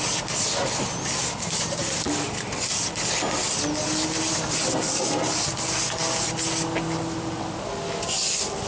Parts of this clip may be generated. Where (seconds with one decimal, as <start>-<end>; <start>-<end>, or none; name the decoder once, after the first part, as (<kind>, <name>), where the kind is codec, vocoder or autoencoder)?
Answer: none

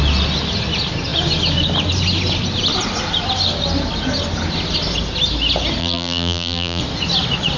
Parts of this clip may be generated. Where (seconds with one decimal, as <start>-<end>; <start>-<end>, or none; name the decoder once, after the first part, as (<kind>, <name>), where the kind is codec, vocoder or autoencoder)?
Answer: 5.8-6.8 (vocoder, BigVGAN v2)